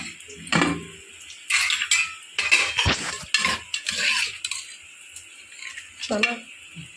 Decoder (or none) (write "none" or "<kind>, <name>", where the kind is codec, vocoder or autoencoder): none